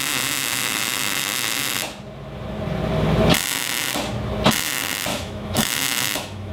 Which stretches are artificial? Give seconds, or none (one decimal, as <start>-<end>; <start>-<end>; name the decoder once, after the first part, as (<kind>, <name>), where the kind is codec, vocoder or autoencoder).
5.1-6.5 (autoencoder, DAC-VAE)